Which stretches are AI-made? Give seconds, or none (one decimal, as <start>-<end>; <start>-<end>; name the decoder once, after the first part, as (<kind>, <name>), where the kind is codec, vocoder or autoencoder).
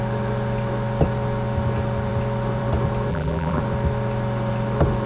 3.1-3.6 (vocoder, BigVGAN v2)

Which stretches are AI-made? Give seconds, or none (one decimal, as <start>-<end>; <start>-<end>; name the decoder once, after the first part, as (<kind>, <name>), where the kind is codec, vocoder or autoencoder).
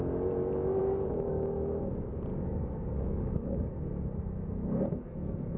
0.8-1.8 (codec, DAC); 2.3-3.7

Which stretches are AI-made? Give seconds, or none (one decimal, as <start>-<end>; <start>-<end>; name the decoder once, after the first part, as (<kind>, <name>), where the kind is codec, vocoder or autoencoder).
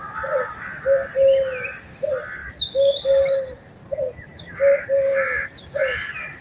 none